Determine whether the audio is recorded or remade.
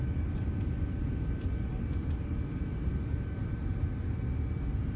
recorded